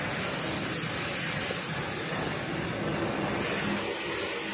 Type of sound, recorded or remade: recorded